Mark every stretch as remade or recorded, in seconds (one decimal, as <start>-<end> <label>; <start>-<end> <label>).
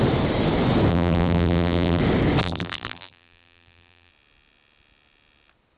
0.0-0.9 recorded; 0.9-2.0 remade; 2.0-2.4 recorded; 2.4-4.1 remade; 4.1-5.8 recorded